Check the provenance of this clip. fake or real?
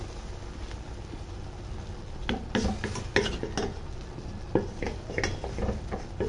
real